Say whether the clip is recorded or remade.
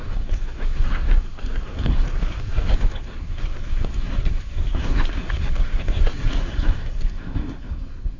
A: remade